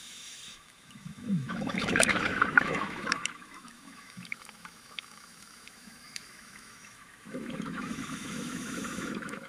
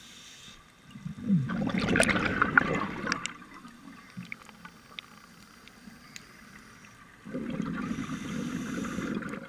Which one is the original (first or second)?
second